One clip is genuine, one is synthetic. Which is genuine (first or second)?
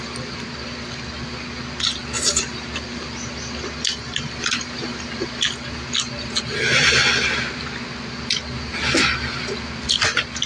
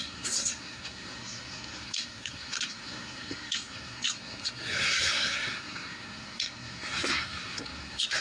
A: first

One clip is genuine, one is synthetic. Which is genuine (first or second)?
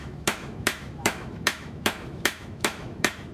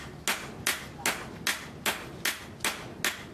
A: second